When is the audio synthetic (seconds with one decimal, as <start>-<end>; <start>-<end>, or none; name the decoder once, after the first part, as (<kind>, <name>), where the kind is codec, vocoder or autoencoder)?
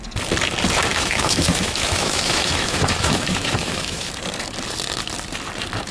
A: 0.9-4.1 (autoencoder, DAC-VAE)